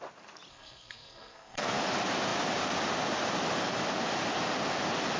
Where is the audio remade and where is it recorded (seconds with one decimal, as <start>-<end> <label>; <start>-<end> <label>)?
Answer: 0.0-0.5 recorded; 0.5-1.8 remade; 1.8-5.2 recorded